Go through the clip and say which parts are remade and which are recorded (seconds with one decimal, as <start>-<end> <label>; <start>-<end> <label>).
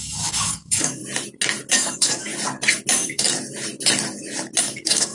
0.0-1.0 remade; 1.0-1.7 recorded; 1.7-2.3 remade; 2.3-2.9 recorded; 2.9-3.3 remade; 3.3-4.6 recorded; 4.6-5.1 remade